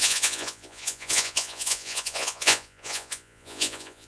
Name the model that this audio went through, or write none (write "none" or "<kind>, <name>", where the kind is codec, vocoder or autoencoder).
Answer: vocoder, Vocos